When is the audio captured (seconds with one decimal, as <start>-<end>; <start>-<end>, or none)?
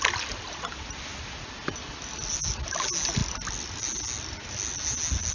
0.0-5.3